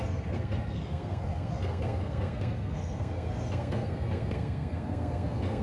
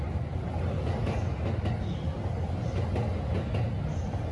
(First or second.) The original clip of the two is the second